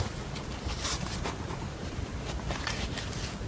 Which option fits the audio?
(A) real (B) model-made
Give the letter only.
B